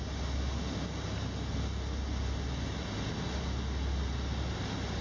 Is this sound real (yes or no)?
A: yes